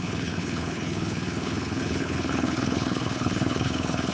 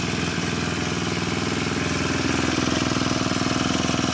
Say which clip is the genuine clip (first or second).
second